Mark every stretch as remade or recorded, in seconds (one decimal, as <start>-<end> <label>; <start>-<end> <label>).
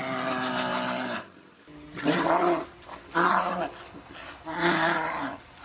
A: 0.0-5.6 recorded